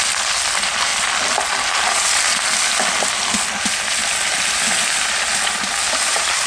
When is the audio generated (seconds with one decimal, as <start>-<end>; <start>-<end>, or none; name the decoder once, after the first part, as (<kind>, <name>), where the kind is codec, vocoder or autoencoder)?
none